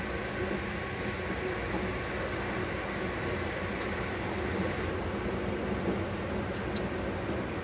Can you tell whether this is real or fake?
real